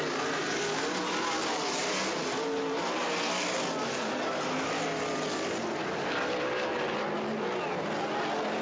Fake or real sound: real